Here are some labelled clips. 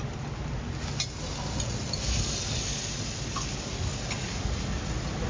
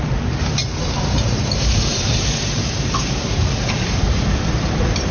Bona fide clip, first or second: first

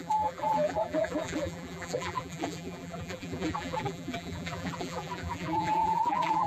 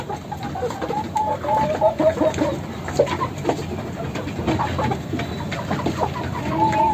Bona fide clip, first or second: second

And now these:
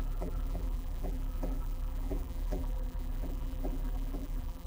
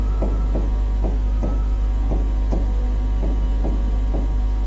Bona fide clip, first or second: second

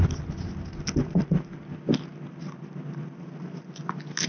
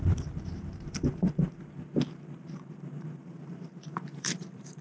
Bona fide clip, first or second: first